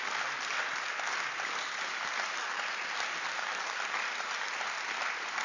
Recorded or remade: recorded